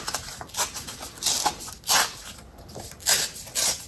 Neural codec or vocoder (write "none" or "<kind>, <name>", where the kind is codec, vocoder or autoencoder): none